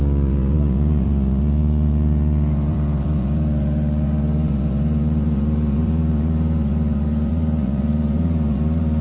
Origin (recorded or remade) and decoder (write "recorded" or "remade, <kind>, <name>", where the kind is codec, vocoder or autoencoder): remade, vocoder, Vocos